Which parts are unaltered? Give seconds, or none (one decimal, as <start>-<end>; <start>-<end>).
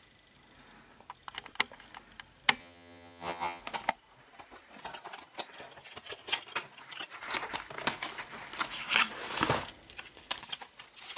0.0-2.6; 3.6-11.2